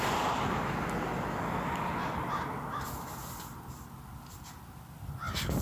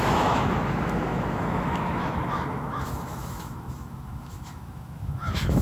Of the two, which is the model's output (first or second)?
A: second